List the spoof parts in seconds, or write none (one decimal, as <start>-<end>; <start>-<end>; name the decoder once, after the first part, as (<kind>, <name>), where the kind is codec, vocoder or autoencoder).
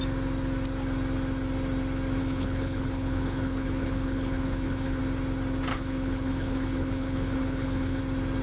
2.2-5.0 (codec, HILCodec); 5.7-8.0